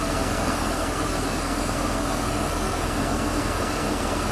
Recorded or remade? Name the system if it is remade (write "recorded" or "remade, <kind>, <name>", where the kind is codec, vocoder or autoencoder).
remade, codec, SNAC